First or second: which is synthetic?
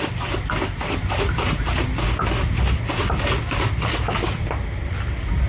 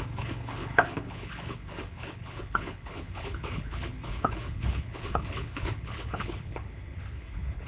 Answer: second